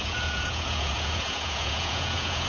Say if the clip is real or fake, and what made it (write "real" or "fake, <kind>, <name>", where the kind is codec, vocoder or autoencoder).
fake, vocoder, Vocos